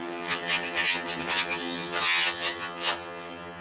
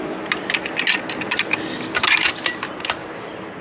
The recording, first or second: second